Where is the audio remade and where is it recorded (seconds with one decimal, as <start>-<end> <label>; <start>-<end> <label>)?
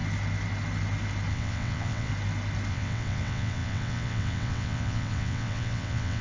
0.0-1.3 recorded; 1.3-2.1 remade; 2.1-2.7 recorded; 2.7-6.2 remade